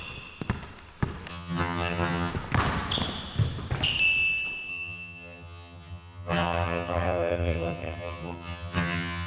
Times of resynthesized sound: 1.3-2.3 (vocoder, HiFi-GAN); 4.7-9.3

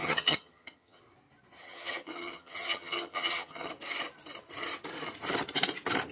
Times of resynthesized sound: 0.0-1.0 (vocoder, HiFi-GAN); 1.6-3.7